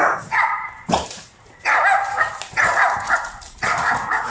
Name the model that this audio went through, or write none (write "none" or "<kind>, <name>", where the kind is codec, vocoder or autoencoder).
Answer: vocoder, BigVGAN v2